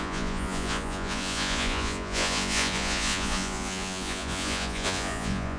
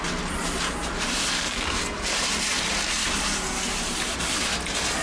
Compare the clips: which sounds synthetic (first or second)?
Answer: first